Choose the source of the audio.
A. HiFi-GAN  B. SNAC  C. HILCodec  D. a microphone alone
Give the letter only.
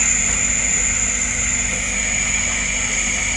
D